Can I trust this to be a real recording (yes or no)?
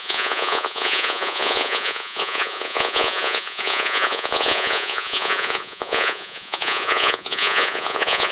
no